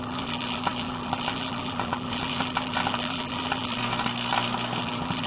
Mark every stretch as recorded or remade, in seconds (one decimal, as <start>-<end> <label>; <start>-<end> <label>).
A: 0.0-3.8 remade; 3.8-4.8 recorded; 4.8-5.3 remade